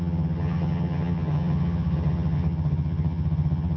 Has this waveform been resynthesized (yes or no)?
yes